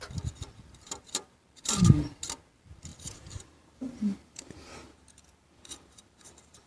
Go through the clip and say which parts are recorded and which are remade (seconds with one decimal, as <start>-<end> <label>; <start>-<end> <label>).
0.0-2.9 recorded; 2.9-6.7 remade